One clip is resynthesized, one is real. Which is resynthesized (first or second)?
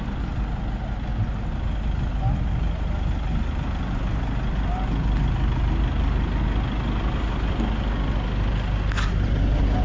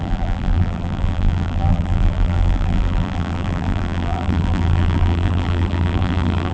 second